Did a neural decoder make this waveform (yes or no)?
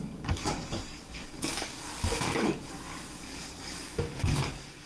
yes